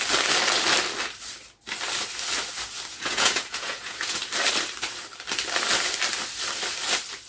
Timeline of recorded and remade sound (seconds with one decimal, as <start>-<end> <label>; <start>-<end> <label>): 0.0-2.9 recorded; 2.9-4.2 remade; 4.2-7.3 recorded